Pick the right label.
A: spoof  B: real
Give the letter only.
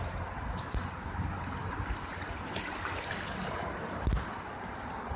B